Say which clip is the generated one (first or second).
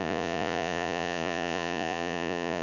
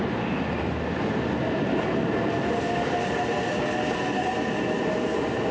first